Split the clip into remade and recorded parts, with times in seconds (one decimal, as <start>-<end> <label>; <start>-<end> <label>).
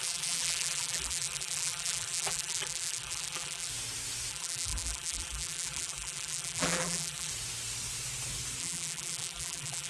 0.0-3.7 remade; 3.7-4.3 recorded; 4.3-7.3 remade; 7.3-8.6 recorded; 8.6-9.9 remade